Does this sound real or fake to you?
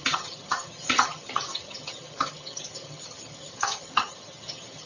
fake